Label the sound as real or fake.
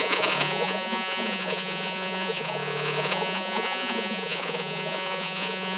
fake